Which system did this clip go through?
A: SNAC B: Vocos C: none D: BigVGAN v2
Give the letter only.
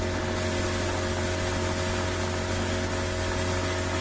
C